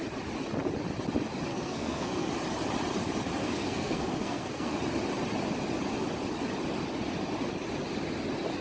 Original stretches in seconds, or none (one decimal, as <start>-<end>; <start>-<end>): 0.0-1.5; 2.3-3.4; 4.8-8.6